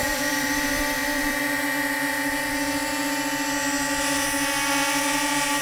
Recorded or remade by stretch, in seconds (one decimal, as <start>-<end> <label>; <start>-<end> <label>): 0.0-1.4 remade; 1.4-5.6 recorded